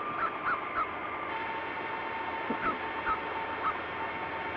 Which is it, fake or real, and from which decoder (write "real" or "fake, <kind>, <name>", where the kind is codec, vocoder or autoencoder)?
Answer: real